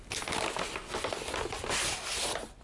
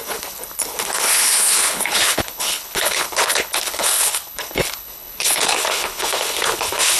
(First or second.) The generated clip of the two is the second